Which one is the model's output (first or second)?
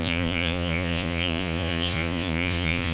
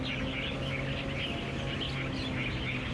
first